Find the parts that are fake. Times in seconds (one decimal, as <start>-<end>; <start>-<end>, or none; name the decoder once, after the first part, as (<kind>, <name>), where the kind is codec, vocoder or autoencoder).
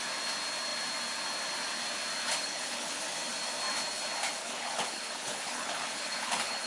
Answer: 2.4-3.0 (codec, HILCodec); 4.4-6.7